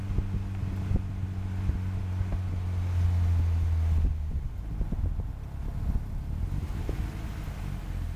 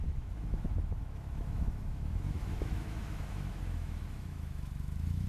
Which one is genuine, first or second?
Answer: first